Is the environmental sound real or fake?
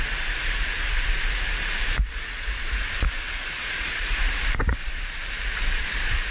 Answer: fake